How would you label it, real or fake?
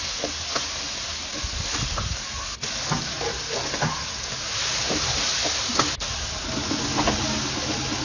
real